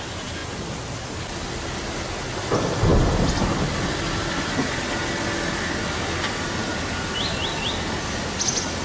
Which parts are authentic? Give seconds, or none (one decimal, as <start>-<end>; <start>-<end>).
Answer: 0.0-8.8